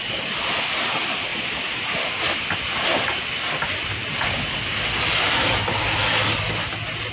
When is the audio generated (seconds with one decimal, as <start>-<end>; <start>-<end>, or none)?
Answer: none